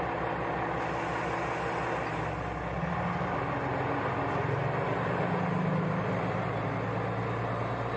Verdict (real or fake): real